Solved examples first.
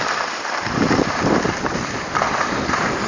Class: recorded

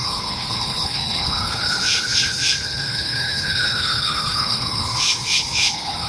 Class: remade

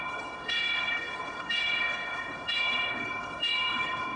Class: remade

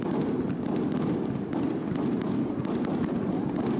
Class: recorded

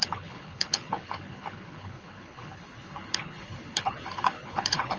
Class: remade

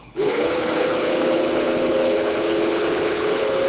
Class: remade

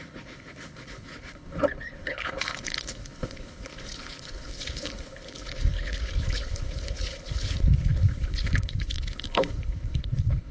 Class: remade